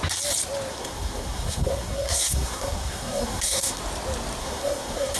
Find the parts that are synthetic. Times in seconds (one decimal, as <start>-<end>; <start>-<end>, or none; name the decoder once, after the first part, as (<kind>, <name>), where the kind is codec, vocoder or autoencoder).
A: 0.7-3.8 (codec, SNAC); 4.4-5.2